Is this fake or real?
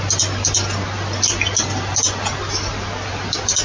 real